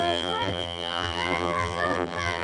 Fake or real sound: fake